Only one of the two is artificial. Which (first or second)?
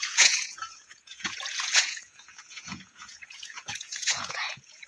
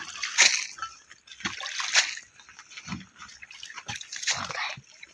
first